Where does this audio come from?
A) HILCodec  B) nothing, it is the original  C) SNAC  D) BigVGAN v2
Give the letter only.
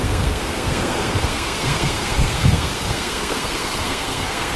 C